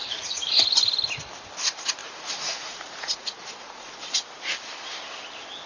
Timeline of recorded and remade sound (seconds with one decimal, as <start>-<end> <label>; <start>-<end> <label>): 0.0-0.5 remade; 0.5-2.0 recorded; 2.0-4.5 remade; 4.5-5.7 recorded